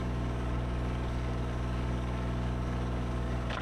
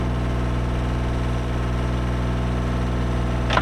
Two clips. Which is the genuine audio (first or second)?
second